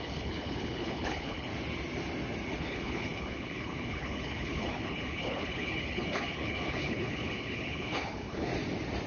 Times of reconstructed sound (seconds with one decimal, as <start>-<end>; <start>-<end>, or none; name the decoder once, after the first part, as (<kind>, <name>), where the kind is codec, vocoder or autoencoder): 0.0-1.5 (codec, HILCodec); 2.5-8.5